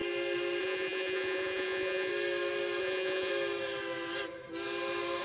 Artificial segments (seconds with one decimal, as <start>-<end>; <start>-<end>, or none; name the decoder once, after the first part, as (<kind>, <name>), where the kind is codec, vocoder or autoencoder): 0.6-2.1 (vocoder, Vocos); 2.8-3.3